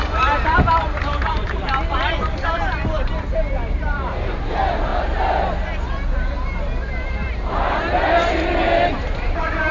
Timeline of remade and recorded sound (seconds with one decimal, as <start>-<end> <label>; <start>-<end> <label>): 0.0-4.9 remade; 4.9-7.3 recorded; 7.3-8.3 remade; 8.3-8.9 recorded; 8.9-9.7 remade